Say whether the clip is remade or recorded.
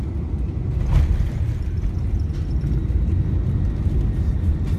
recorded